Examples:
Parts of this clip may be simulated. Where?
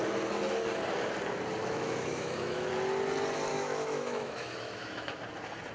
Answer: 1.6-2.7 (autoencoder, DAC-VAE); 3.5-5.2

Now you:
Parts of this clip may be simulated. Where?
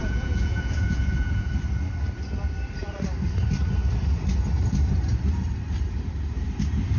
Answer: 0.0-1.5 (vocoder, Vocos)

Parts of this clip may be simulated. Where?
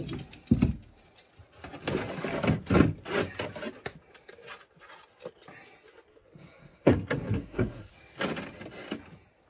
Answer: 6.1-7.9 (codec, SNAC)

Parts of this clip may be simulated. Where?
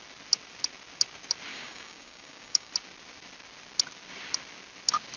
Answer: 1.5-2.7 (codec, DAC)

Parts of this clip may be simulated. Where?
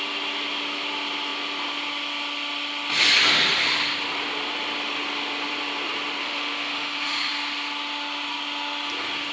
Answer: 6.2-7.3 (autoencoder, DAC-VAE)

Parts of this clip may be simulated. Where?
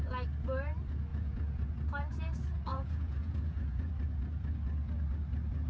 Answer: 1.1-1.7 (vocoder, Vocos); 2.7-3.9